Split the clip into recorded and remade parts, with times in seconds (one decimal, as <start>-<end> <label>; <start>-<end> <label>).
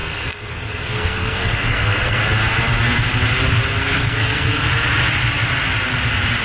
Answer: 0.0-2.2 remade; 2.2-3.8 recorded; 3.8-4.7 remade; 4.7-6.4 recorded